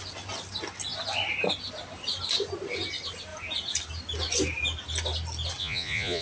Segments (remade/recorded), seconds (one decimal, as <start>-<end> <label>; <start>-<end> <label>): 0.0-5.6 recorded; 5.6-6.2 remade